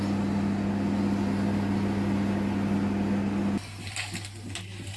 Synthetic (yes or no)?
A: no